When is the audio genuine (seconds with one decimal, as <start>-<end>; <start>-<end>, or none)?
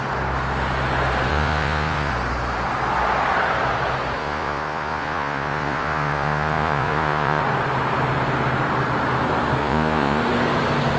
0.0-1.3; 2.1-4.2; 7.4-9.6; 10.2-11.0